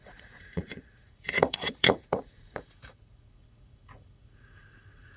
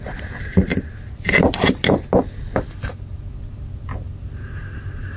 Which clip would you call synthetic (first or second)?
first